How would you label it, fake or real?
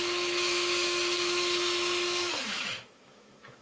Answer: fake